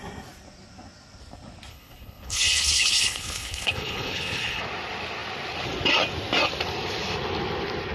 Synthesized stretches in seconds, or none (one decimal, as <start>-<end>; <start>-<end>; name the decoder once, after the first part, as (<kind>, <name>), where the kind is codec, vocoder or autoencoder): 1.7-4.6 (codec, HILCodec)